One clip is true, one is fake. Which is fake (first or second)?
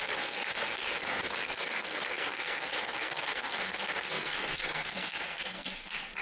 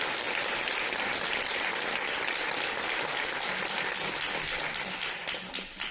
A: first